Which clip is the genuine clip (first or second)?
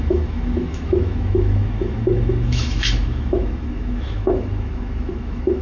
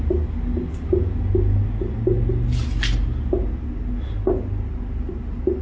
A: second